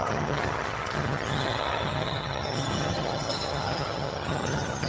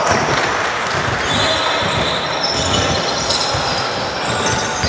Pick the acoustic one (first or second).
second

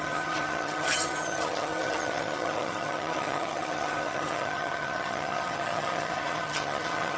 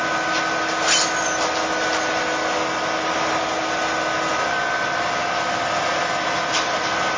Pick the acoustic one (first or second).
second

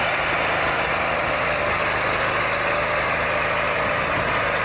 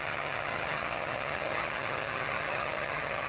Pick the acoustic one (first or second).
first